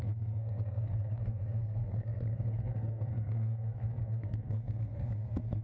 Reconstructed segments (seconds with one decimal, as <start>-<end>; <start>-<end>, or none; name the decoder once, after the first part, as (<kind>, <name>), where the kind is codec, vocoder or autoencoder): 0.0-5.6 (codec, SNAC)